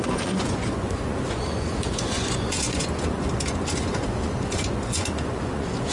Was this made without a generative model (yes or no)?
no